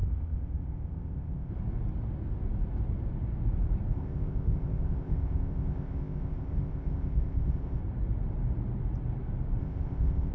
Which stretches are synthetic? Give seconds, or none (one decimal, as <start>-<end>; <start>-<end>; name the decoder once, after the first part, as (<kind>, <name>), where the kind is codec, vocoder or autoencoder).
0.0-1.5 (codec, ZipCodec); 3.9-7.8; 9.6-10.3